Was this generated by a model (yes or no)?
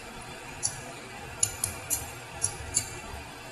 yes